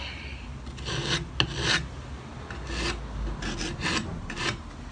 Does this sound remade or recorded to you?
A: recorded